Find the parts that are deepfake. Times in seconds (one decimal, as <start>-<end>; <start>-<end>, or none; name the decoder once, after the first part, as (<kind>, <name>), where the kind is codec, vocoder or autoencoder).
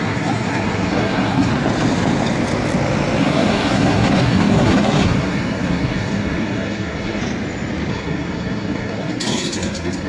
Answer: 0.0-1.5 (codec, SNAC); 3.2-7.2; 7.9-10.1